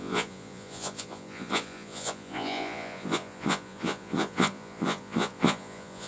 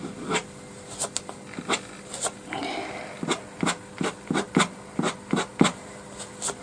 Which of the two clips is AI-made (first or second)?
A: first